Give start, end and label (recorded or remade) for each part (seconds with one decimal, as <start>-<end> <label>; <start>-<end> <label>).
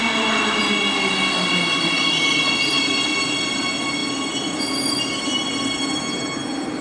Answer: 0.0-6.8 recorded